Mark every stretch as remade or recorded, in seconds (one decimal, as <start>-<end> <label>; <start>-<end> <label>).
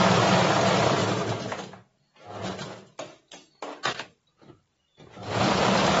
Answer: 0.0-6.0 recorded